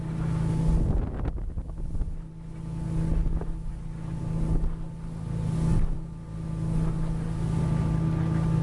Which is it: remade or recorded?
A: recorded